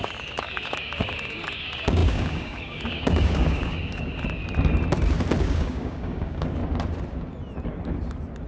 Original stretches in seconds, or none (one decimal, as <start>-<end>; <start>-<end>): 4.4-5.4; 6.6-8.5